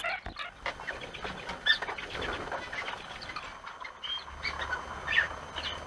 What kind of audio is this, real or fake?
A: real